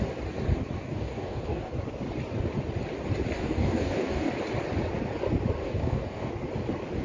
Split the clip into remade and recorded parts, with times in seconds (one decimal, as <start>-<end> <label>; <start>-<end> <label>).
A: 0.0-0.8 recorded; 0.8-1.7 remade; 1.7-3.4 recorded; 3.4-4.3 remade; 4.3-5.6 recorded; 5.6-6.3 remade; 6.3-7.0 recorded